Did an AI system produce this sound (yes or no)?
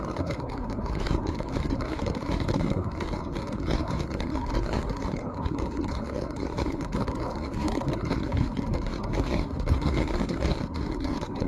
yes